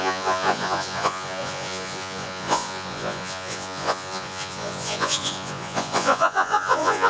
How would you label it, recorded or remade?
remade